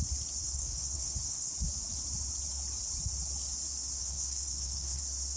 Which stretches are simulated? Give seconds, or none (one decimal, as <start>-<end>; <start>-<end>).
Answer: 0.4-1.5; 4.0-5.0